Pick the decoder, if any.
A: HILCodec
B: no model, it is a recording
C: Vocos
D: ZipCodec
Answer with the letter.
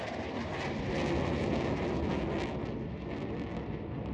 B